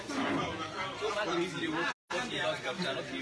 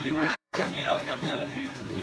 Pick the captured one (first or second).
first